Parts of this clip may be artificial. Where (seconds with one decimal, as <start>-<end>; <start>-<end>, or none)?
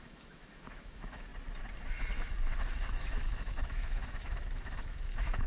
0.0-1.3; 3.0-5.5